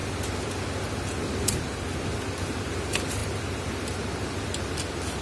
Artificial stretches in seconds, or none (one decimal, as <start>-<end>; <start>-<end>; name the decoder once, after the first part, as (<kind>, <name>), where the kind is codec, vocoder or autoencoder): none